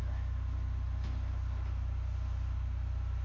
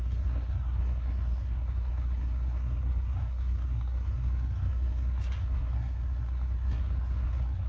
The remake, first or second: second